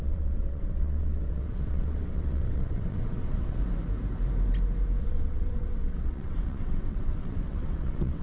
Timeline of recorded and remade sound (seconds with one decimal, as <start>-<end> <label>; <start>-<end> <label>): 0.0-3.6 remade; 3.6-5.0 recorded; 5.0-8.2 remade